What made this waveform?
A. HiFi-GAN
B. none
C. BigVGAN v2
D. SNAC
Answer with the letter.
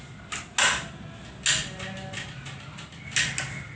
B